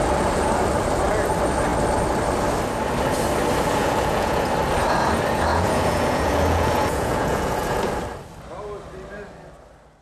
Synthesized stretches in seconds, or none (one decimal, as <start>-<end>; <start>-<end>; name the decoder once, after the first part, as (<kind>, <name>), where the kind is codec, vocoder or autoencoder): 3.8-4.5 (vocoder, Vocos); 5.5-7.9